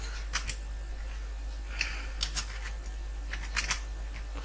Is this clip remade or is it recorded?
recorded